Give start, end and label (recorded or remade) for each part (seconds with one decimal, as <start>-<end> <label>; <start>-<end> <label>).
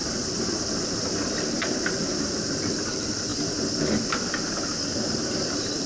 0.0-3.3 remade; 3.3-5.5 recorded; 5.5-5.9 remade